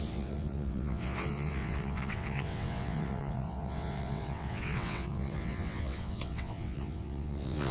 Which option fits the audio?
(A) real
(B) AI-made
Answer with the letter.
B